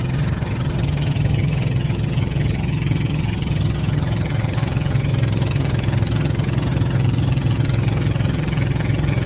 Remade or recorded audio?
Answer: remade